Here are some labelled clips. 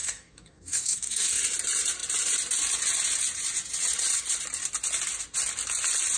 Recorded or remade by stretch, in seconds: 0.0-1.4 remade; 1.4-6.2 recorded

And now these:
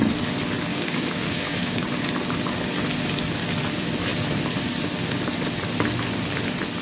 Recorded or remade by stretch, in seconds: 0.0-0.7 recorded; 0.7-1.9 remade; 1.9-6.8 recorded

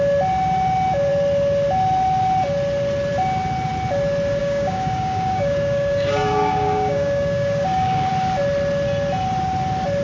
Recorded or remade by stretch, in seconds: 0.0-4.4 recorded; 4.4-8.1 remade; 8.1-10.0 recorded